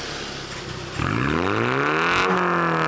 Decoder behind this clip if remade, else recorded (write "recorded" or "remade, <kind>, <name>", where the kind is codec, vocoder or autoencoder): recorded